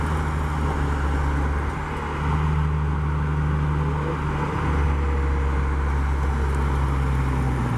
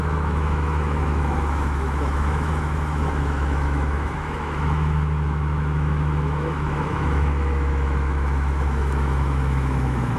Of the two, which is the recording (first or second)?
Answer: first